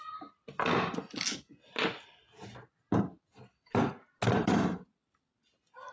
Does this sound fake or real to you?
real